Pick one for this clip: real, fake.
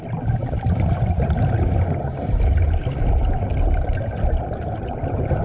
real